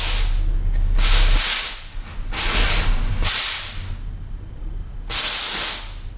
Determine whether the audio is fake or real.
real